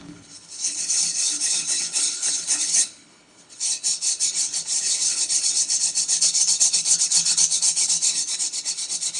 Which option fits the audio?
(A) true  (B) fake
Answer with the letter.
B